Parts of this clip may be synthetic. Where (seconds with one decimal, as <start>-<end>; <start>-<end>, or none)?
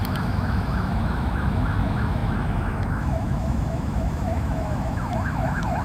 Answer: 0.0-5.8